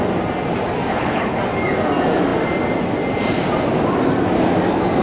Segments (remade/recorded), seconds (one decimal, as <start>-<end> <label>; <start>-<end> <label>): 0.0-0.9 recorded; 0.9-1.4 remade; 1.4-5.0 recorded